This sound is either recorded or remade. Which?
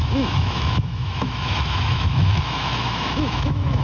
remade